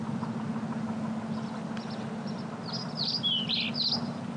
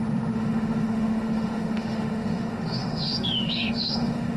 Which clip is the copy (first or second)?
second